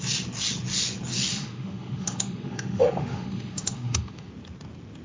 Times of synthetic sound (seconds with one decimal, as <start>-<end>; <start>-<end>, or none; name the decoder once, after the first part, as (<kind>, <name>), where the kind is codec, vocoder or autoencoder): 1.3-4.3 (autoencoder, DAC-VAE)